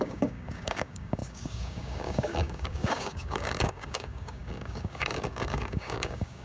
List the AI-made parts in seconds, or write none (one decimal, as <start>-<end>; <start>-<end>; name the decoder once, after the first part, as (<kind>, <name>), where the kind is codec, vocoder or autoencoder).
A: 0.0-6.4 (codec, DAC)